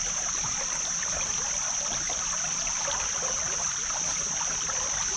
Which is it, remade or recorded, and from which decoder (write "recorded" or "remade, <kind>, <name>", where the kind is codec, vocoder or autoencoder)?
recorded